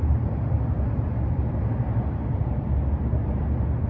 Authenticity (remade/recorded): recorded